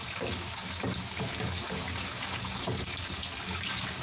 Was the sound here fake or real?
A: fake